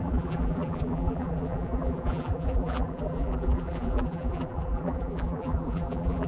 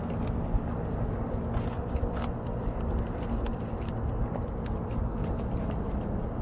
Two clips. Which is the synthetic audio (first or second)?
first